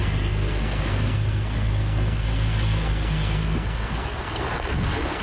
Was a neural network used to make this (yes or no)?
yes